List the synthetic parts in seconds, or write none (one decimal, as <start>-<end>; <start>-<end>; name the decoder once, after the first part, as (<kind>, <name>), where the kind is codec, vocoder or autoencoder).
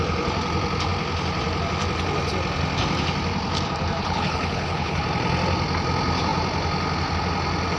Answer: 4.0-5.0 (codec, HILCodec)